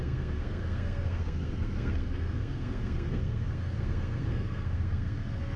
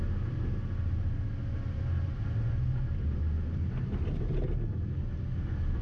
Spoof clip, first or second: first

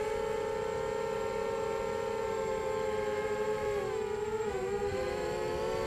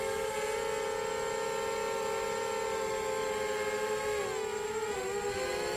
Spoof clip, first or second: first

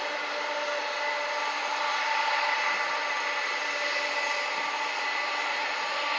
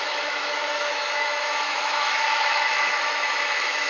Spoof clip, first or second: second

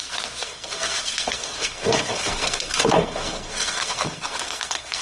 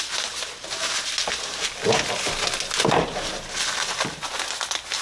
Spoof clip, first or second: first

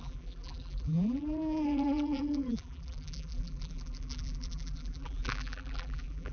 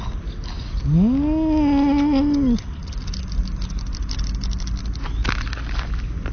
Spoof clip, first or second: first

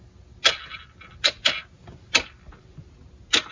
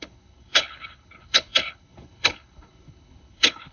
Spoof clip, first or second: second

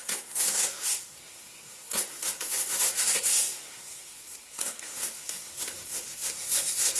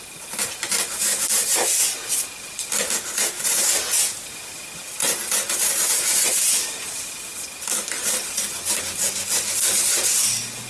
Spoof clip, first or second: first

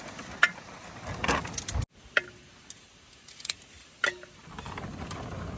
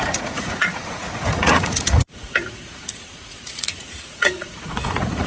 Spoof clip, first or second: second